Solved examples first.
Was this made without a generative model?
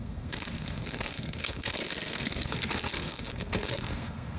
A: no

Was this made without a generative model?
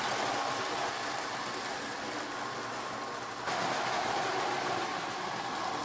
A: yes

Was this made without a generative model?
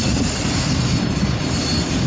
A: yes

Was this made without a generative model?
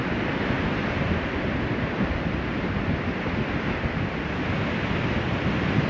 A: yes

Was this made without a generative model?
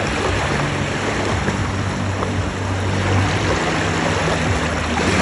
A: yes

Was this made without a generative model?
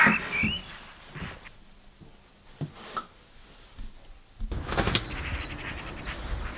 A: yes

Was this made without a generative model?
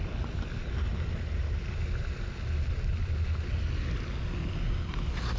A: yes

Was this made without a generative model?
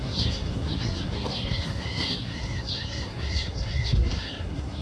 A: no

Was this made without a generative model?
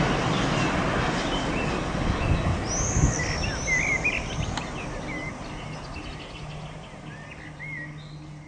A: yes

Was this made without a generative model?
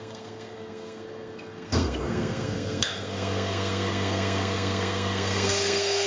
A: no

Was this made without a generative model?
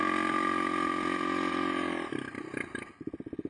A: yes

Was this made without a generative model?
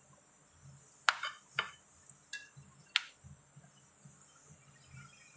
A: yes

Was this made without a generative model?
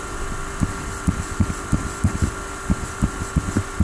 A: yes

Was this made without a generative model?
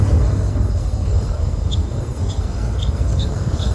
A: no